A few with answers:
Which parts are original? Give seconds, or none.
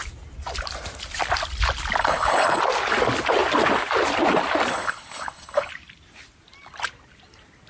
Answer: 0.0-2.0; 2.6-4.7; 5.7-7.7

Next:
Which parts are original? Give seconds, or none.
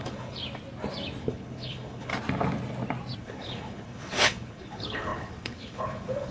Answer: 0.4-1.2; 2.1-3.2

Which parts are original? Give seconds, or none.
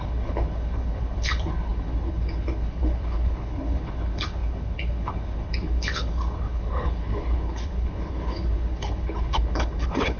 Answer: none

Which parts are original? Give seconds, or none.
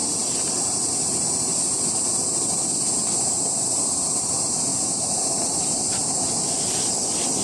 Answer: 0.0-7.4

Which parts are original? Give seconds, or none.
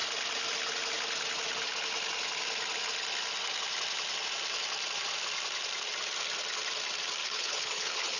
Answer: 0.0-7.2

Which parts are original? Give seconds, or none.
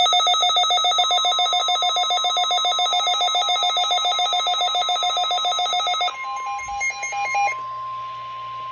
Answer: 0.0-8.7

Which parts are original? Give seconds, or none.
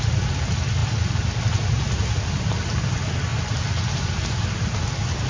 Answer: 0.0-5.3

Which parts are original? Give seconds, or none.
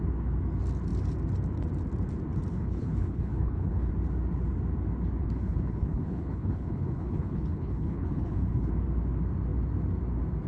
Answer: 0.0-2.5; 3.9-5.2; 8.7-10.5